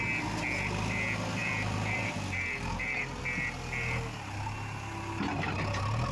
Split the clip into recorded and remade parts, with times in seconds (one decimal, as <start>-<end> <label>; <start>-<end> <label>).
0.0-1.4 recorded; 1.4-3.2 remade; 3.2-6.1 recorded